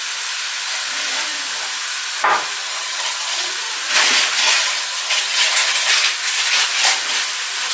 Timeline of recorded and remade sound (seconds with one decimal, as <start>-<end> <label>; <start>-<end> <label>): 0.0-2.6 recorded; 2.6-3.5 remade; 3.5-4.4 recorded; 4.4-5.9 remade; 5.9-7.7 recorded